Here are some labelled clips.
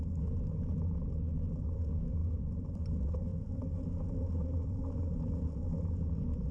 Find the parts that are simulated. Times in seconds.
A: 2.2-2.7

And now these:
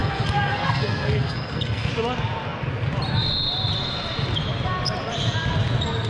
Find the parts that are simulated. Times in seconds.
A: 0.0-1.9

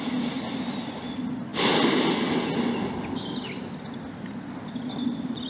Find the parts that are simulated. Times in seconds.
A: none

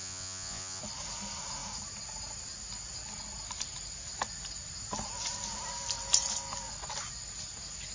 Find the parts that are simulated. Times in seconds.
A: 0.0-0.8

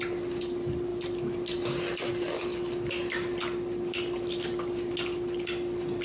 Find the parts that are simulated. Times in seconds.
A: 2.5-4.9

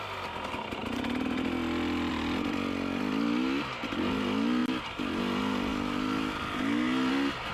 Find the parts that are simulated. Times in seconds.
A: none

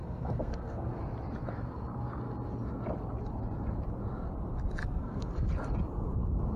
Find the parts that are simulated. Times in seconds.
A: 0.0-1.0; 4.8-5.3

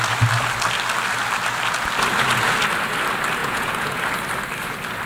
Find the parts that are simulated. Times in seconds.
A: 3.4-4.0